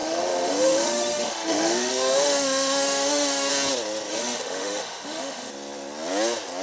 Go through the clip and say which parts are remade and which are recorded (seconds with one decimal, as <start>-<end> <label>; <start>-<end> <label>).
0.0-3.5 remade; 3.5-4.1 recorded; 4.1-5.5 remade; 5.5-6.6 recorded